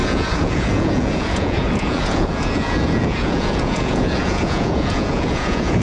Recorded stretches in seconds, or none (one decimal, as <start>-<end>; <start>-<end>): none